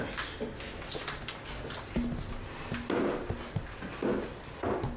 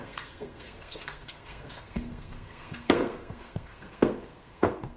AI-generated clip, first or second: second